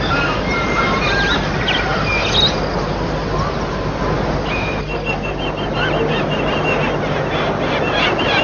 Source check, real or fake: real